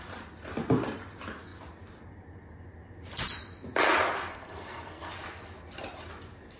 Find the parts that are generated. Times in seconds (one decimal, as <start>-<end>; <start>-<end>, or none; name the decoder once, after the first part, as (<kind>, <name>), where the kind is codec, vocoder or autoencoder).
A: 4.3-5.1 (codec, SNAC)